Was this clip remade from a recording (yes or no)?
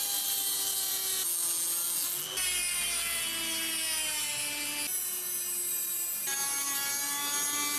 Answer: no